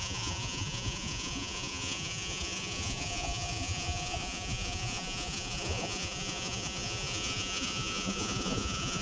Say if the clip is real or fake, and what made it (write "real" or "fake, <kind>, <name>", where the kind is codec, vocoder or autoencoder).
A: fake, vocoder, Vocos